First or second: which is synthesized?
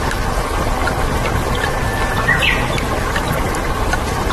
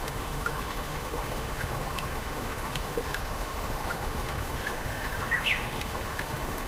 second